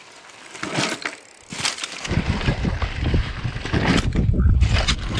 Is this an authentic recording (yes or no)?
no